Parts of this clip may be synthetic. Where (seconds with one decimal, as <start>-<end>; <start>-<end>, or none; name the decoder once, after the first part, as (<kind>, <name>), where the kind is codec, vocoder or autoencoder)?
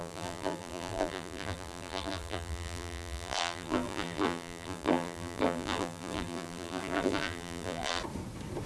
0.0-8.0 (vocoder, BigVGAN v2)